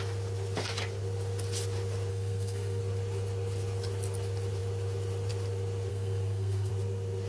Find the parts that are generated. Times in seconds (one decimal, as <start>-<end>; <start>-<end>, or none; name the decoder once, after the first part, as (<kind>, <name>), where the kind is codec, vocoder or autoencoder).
2.1-2.8 (codec, SNAC); 5.9-6.7